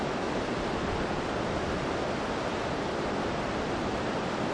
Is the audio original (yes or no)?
yes